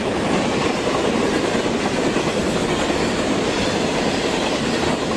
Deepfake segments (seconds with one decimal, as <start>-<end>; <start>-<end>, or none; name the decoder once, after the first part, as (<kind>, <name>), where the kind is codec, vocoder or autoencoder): 0.0-2.6 (vocoder, BigVGAN v2); 3.2-5.2